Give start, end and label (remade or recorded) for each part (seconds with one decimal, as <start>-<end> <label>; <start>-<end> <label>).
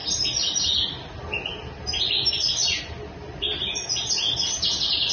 0.0-5.1 recorded